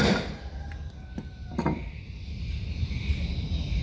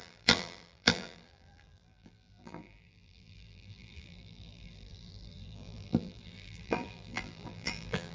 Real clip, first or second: first